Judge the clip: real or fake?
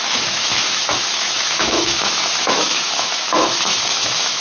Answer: fake